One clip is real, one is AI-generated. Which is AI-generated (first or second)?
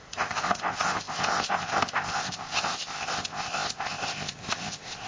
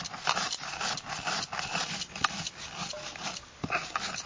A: first